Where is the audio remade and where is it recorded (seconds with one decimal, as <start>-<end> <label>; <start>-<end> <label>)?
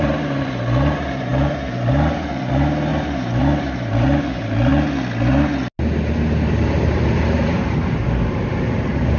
0.0-4.7 remade; 4.7-6.8 recorded; 6.8-9.2 remade